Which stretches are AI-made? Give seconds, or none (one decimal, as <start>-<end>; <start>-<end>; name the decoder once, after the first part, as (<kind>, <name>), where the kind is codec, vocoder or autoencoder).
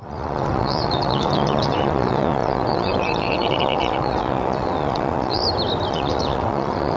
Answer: 0.0-5.4 (vocoder, WaveNeXt); 5.9-7.0